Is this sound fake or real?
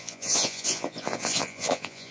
fake